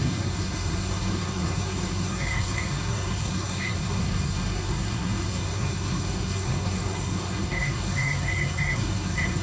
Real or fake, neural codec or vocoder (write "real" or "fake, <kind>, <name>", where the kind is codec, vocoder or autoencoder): fake, codec, SNAC